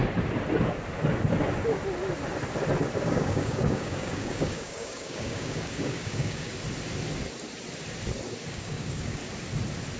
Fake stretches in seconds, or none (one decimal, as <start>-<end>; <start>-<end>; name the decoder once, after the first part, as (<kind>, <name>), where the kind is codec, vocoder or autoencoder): 3.0-6.5 (codec, DAC); 8.5-9.2